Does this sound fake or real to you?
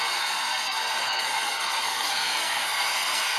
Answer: fake